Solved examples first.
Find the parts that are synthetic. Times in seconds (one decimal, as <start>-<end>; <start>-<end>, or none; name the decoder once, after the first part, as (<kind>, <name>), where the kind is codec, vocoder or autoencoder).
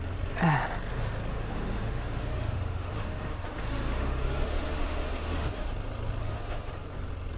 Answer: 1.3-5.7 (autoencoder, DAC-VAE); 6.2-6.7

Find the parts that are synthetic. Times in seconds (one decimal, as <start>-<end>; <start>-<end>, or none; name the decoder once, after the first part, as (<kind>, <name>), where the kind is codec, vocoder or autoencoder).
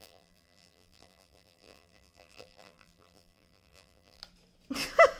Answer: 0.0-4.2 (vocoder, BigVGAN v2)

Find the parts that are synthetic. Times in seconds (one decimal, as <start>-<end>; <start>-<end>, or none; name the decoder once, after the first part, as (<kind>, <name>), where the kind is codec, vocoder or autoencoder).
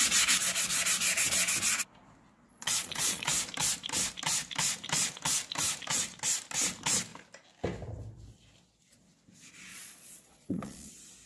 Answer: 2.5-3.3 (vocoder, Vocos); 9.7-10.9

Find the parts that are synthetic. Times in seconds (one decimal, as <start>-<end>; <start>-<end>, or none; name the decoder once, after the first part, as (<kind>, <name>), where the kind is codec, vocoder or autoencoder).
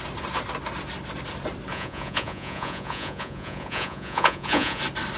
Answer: 1.7-4.8 (vocoder, Vocos)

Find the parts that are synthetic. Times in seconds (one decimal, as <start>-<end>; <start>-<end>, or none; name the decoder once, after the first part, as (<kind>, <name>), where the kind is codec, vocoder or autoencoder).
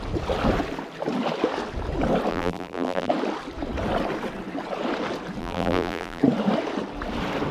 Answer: 2.3-3.1 (vocoder, BigVGAN v2); 5.4-6.2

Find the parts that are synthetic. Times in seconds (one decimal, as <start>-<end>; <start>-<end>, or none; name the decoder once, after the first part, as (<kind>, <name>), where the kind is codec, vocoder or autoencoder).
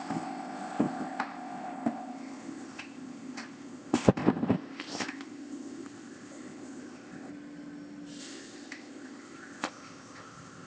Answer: 0.0-7.3 (codec, ZipCodec); 8.2-10.7